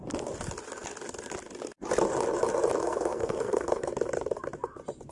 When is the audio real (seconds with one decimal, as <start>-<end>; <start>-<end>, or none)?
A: 0.0-2.8; 3.9-5.1